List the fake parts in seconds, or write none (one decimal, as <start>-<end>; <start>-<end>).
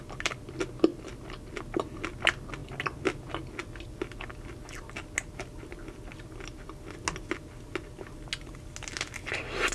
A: none